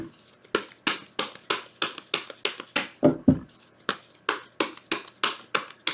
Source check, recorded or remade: recorded